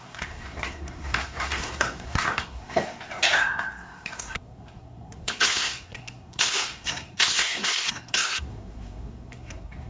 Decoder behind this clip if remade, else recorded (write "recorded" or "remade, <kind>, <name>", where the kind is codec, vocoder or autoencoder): remade, codec, SNAC